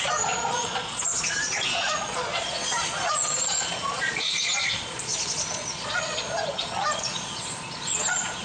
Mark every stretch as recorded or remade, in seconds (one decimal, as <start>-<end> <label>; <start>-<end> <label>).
0.0-8.4 remade